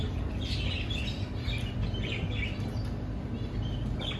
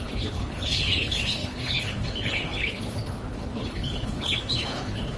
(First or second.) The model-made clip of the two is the second